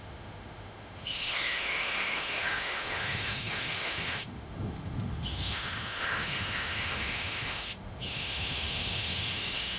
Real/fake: fake